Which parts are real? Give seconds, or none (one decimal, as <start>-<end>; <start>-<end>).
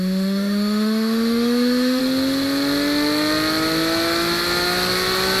2.0-5.4